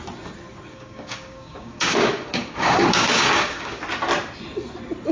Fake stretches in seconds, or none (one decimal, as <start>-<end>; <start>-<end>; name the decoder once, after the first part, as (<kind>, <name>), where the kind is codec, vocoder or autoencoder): 0.7-3.8 (codec, DAC)